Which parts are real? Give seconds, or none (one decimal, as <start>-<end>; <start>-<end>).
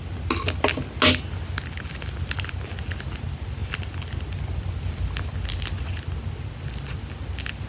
0.0-7.7